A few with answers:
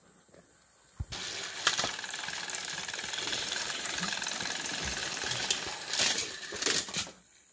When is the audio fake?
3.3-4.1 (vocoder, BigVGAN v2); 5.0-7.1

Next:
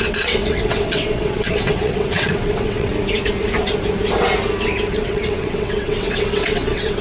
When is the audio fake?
0.0-2.9 (vocoder, WaveNeXt); 4.9-7.0

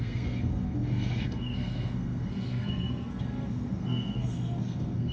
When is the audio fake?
0.0-5.1 (codec, SNAC)

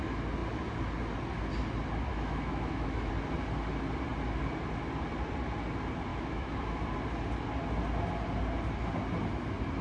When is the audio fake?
2.1-3.1 (autoencoder, DAC-VAE); 6.1-6.8

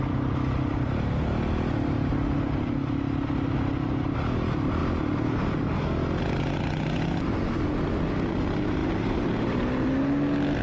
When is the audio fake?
8.8-9.7 (vocoder, BigVGAN v2)

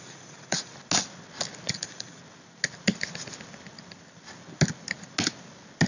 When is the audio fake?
0.0-0.7 (vocoder, Vocos); 1.7-2.2

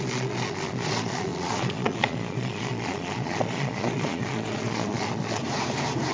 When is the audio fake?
0.0-5.4 (vocoder, Vocos)